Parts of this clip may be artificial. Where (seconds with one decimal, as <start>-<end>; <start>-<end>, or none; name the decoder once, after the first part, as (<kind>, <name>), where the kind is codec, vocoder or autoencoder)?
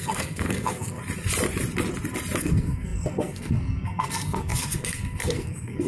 0.0-1.0 (codec, SNAC); 2.4-5.9